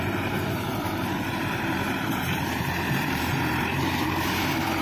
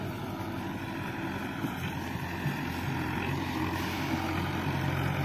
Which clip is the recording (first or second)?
second